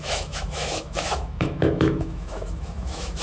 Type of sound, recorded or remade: remade